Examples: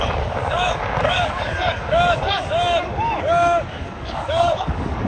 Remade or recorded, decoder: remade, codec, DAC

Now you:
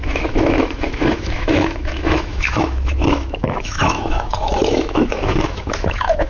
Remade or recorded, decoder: remade, autoencoder, DAC-VAE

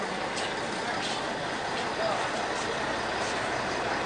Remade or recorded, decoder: recorded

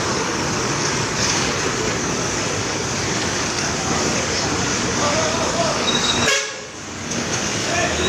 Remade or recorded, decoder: remade, codec, DAC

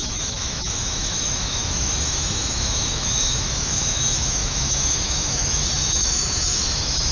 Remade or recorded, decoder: remade, autoencoder, DAC-VAE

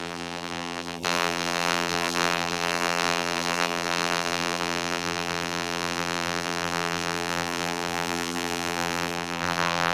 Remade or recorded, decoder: remade, vocoder, BigVGAN v2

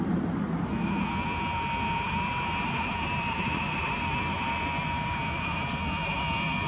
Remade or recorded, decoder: recorded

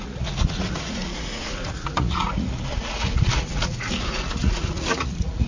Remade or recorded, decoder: remade, vocoder, Vocos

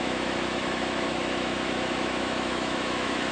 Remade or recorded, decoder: remade, autoencoder, DAC-VAE